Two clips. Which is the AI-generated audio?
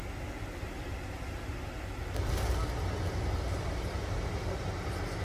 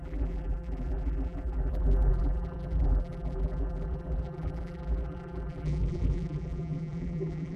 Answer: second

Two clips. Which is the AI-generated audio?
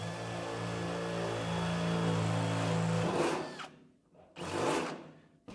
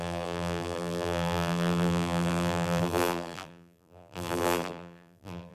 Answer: second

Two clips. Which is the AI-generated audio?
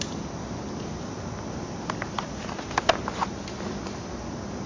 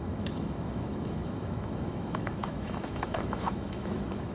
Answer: second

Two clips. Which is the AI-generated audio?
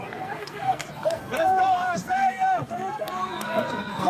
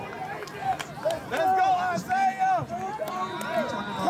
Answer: first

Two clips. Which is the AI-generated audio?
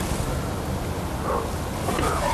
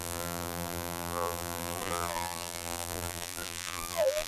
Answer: second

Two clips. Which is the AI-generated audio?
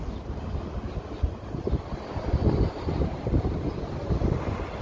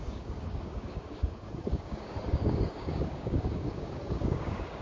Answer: second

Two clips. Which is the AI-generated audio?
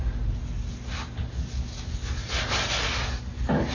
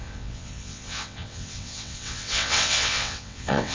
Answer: second